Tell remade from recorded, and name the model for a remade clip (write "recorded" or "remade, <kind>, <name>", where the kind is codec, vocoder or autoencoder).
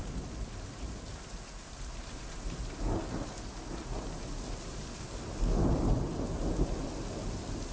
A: recorded